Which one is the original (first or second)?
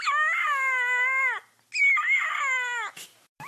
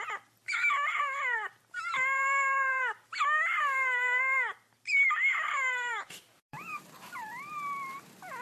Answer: first